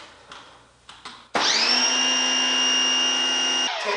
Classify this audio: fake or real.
real